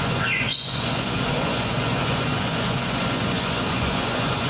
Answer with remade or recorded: remade